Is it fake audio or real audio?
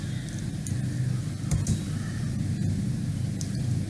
real